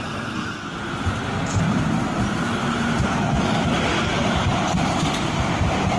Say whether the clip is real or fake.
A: real